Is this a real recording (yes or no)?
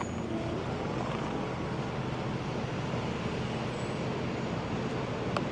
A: yes